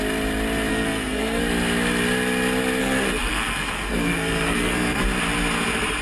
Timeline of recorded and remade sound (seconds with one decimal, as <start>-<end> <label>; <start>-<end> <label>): 0.0-0.7 recorded; 0.7-1.4 remade; 1.4-2.8 recorded; 2.8-5.0 remade; 5.0-6.0 recorded